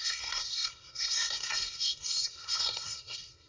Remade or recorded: remade